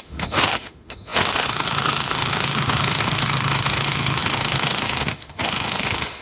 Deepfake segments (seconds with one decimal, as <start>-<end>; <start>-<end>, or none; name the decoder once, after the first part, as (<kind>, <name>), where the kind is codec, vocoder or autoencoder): 0.0-6.2 (autoencoder, DAC-VAE)